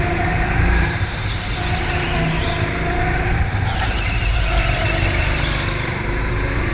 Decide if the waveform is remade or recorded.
remade